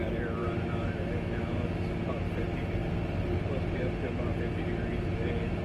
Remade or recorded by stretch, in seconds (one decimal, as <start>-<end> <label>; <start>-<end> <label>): 0.0-0.4 recorded; 0.4-2.1 remade; 2.1-5.6 recorded